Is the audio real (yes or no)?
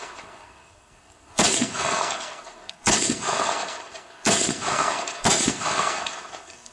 no